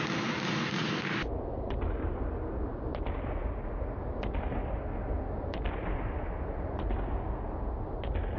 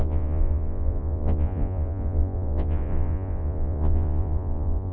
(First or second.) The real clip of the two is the first